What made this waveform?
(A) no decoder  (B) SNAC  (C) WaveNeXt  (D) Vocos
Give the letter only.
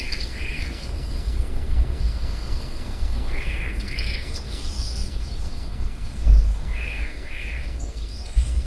B